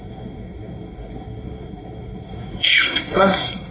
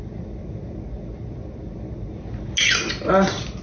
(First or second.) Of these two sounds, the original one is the second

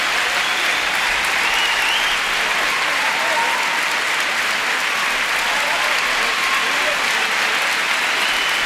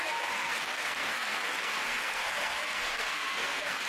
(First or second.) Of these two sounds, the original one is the first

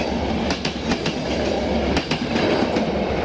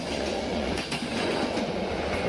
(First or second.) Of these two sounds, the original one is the first